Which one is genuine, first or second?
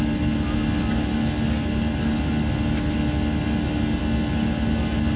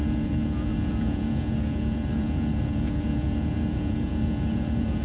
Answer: first